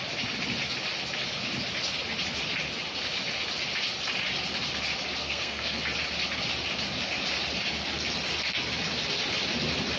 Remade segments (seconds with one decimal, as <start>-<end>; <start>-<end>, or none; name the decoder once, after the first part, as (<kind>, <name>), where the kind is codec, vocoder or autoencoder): 5.2-5.8 (codec, SNAC)